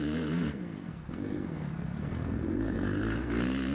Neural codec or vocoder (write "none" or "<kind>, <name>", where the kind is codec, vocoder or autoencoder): codec, SNAC